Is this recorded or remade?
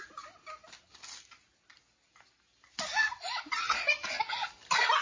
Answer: recorded